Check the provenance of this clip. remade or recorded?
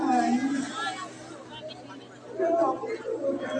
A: recorded